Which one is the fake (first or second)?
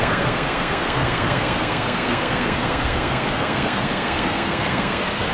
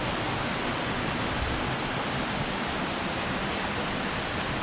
first